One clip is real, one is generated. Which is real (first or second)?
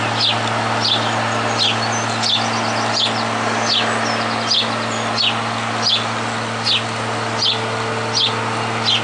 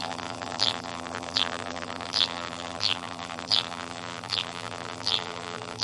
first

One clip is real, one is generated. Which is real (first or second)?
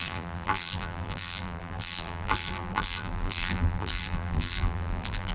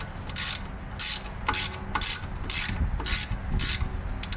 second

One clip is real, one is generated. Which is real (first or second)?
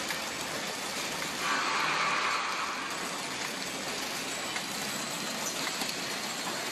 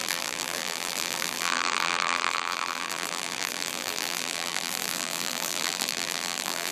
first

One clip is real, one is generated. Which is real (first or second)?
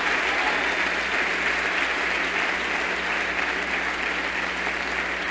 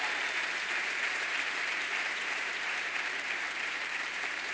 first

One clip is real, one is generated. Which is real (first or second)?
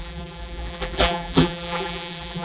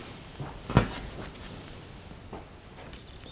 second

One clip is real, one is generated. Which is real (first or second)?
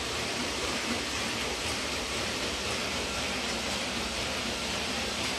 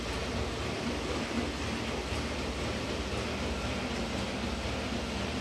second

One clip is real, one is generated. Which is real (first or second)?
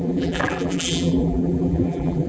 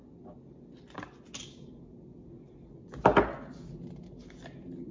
second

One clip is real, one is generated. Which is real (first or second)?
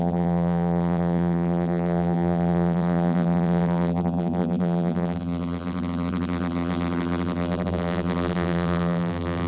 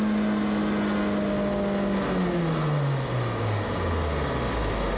second